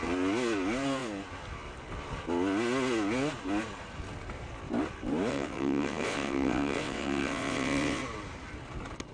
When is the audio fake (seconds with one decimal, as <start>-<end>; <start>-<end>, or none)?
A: 5.3-8.0